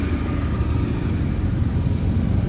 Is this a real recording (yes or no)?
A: yes